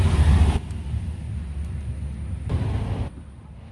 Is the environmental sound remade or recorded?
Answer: recorded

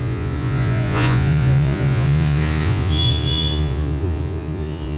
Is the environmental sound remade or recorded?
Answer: remade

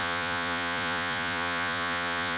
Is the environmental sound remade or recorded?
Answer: remade